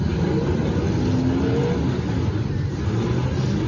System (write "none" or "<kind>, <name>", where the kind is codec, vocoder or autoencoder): none